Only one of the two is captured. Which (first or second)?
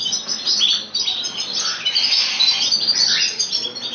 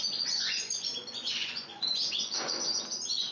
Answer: first